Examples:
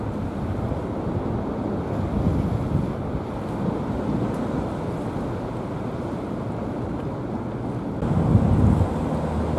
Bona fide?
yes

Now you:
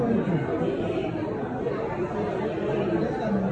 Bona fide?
yes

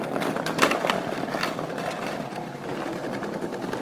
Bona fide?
no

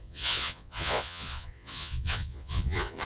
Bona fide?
no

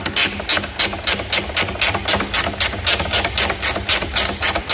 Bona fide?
yes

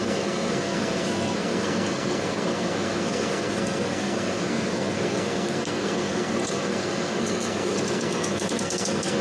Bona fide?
no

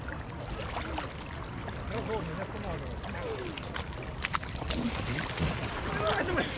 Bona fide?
yes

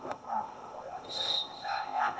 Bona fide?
no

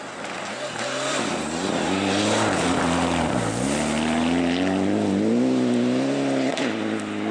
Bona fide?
yes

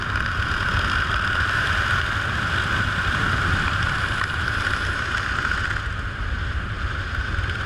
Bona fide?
yes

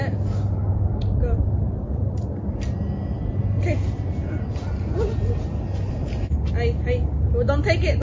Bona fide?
yes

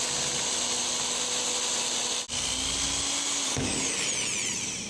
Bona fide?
yes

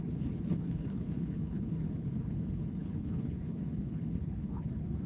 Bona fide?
no